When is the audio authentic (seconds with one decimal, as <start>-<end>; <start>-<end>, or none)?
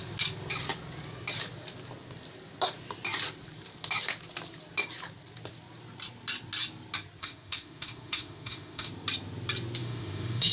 0.0-7.2; 8.9-9.8